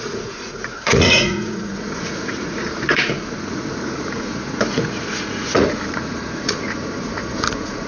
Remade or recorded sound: remade